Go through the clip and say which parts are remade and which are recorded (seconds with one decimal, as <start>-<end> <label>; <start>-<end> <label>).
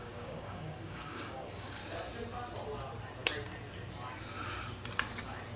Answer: 0.0-1.8 remade; 1.8-5.6 recorded